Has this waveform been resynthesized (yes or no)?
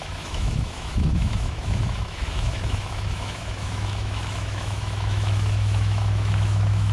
yes